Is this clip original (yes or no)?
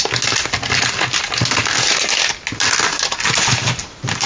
yes